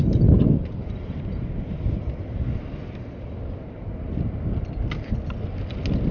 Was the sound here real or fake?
real